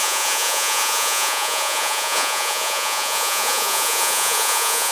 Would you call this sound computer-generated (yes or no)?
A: yes